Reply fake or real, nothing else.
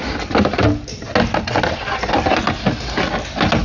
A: real